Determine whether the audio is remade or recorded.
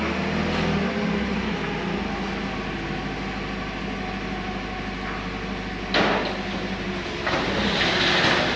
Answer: recorded